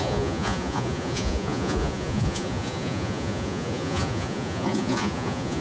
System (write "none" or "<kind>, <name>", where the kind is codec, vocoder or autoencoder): vocoder, Vocos